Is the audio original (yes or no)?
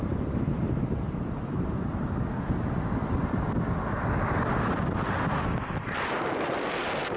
yes